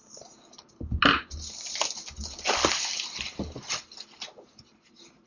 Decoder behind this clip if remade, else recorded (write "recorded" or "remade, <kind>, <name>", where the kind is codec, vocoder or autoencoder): recorded